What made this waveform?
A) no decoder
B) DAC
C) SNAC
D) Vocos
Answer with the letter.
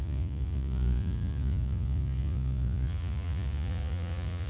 D